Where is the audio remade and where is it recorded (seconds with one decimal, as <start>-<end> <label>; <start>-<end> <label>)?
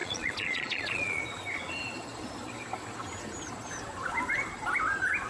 0.0-1.2 remade; 1.2-5.3 recorded